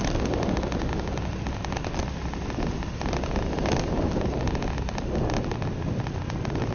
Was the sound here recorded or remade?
recorded